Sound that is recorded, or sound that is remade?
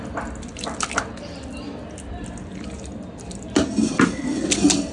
recorded